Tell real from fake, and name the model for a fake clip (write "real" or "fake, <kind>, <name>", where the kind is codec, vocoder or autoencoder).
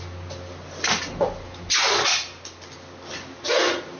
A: real